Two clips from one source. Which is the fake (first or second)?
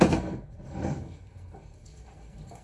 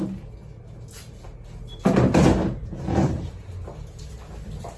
first